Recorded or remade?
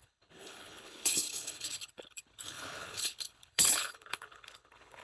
remade